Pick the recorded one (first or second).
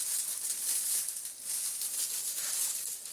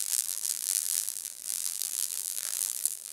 first